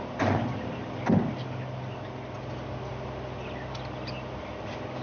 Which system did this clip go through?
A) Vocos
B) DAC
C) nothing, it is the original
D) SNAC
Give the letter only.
C